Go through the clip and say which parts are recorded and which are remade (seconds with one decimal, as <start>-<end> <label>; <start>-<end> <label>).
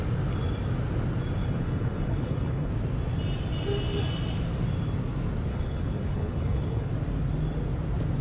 0.0-1.4 recorded; 1.4-2.7 remade; 2.7-5.5 recorded; 5.5-6.9 remade; 6.9-8.2 recorded